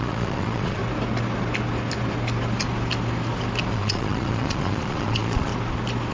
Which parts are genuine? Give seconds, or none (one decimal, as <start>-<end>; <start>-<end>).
0.8-3.7; 5.5-6.1